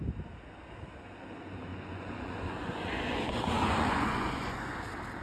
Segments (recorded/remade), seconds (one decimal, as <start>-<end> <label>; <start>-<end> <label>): 0.0-1.7 recorded; 1.7-4.8 remade; 4.8-5.2 recorded